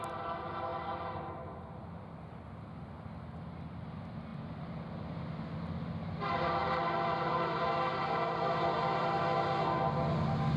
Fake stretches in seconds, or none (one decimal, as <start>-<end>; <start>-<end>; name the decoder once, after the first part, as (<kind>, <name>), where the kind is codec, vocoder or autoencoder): none